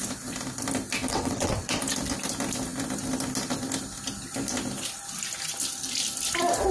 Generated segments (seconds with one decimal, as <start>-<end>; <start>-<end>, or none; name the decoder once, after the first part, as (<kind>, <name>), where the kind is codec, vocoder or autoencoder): 1.1-1.8 (vocoder, WaveNeXt)